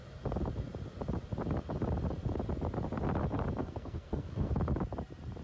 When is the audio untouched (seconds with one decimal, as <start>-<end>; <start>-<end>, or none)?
0.0-3.6; 4.5-5.4